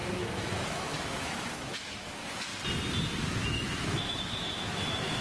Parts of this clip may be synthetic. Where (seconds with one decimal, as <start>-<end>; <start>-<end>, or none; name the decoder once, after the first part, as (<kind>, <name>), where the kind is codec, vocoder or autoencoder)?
0.0-2.5 (autoencoder, DAC-VAE); 3.2-5.2